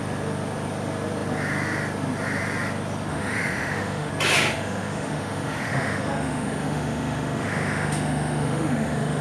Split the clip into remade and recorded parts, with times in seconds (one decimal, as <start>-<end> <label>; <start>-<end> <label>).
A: 0.0-3.1 recorded; 3.1-4.1 remade; 4.1-4.5 recorded; 4.5-9.2 remade